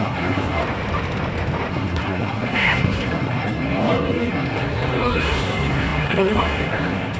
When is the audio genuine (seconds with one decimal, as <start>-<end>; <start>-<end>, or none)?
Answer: 0.6-1.7